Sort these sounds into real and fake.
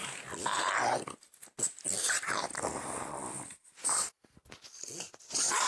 real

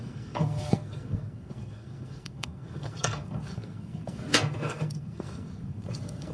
fake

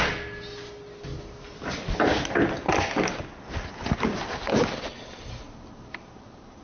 real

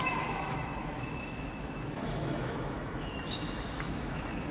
fake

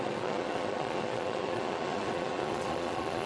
fake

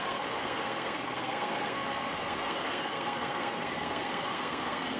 fake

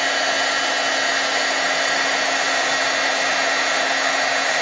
real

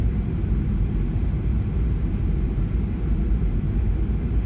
real